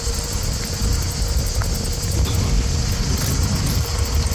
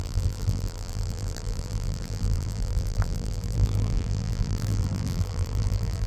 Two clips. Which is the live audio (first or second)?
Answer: first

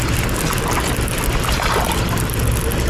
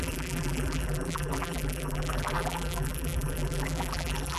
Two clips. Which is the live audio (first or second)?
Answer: first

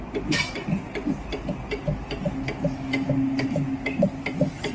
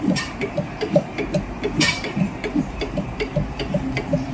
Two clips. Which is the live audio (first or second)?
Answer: first